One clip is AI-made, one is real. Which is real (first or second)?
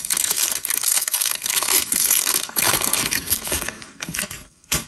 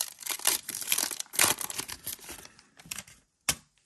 second